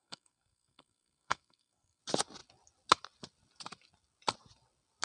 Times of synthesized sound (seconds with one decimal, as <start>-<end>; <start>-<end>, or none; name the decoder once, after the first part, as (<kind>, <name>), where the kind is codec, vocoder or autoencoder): 0.0-2.0 (codec, SNAC)